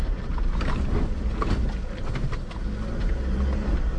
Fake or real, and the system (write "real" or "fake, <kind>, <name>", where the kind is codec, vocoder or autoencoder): real